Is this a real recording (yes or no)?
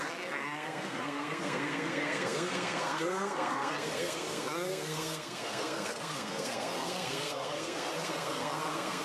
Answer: no